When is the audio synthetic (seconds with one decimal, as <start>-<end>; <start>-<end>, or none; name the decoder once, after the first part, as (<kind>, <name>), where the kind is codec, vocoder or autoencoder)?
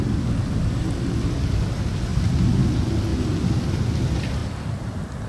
none